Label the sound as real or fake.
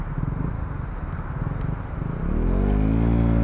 real